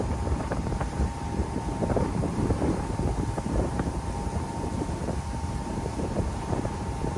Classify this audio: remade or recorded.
remade